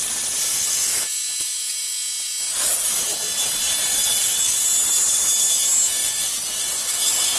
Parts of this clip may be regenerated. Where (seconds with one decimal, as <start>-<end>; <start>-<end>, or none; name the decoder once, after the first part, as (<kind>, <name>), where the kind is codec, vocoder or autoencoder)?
6.0-7.0 (vocoder, Vocos)